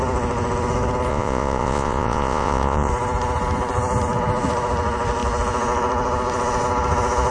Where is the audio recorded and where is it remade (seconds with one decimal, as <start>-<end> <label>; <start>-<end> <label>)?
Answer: 0.0-1.1 recorded; 1.1-2.9 remade; 2.9-7.3 recorded